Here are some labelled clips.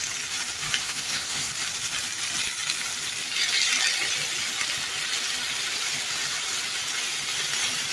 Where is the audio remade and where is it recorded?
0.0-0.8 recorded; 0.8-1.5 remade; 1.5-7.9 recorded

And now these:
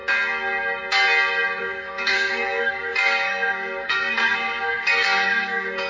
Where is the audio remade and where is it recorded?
0.0-1.6 recorded; 1.6-5.9 remade

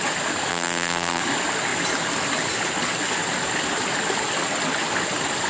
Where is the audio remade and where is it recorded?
0.0-0.5 recorded; 0.5-1.2 remade; 1.2-5.5 recorded

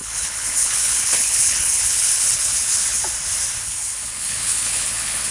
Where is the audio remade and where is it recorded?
0.0-3.0 remade; 3.0-3.6 recorded; 3.6-5.3 remade

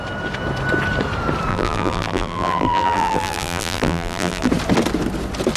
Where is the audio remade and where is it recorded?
0.0-1.5 recorded; 1.5-4.5 remade; 4.5-5.6 recorded

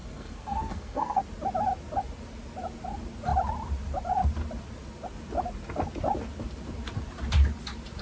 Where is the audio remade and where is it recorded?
0.0-1.2 remade; 1.2-8.0 recorded